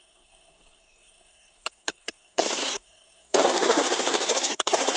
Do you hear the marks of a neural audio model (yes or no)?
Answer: yes